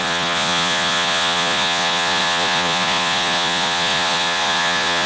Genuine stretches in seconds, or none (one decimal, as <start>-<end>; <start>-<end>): none